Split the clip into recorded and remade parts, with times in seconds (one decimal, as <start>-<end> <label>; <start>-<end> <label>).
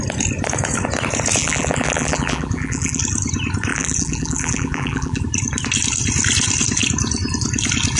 0.0-1.4 recorded; 1.4-3.0 remade; 3.0-3.7 recorded; 3.7-5.2 remade; 5.2-8.0 recorded